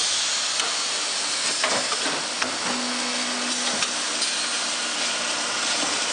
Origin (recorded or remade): recorded